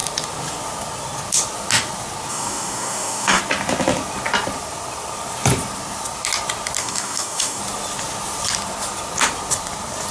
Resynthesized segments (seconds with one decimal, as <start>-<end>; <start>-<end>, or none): 2.3-3.4; 6.8-7.6